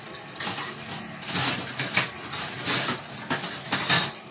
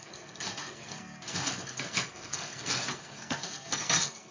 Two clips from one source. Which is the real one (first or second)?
first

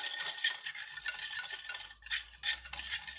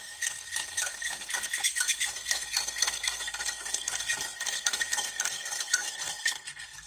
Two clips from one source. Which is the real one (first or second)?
first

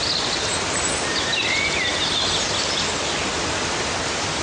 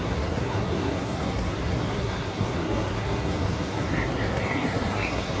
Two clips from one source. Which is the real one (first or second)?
first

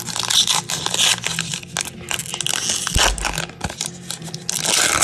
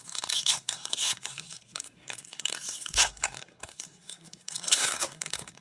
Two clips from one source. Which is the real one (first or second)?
first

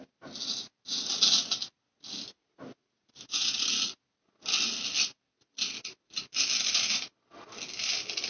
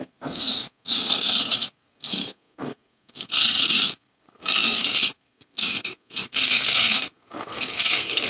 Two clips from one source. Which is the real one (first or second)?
first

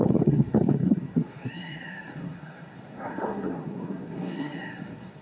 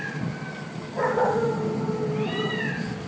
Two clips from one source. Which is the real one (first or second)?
second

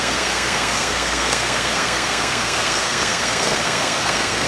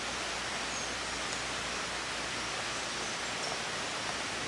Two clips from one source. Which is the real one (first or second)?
second